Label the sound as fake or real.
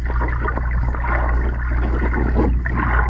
real